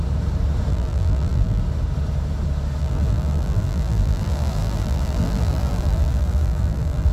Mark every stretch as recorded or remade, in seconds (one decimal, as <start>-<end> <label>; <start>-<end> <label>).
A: 0.0-0.7 recorded; 0.7-1.6 remade; 1.6-2.8 recorded; 2.8-7.1 remade